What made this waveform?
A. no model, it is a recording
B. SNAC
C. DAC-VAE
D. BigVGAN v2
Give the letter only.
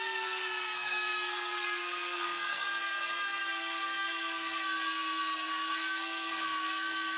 B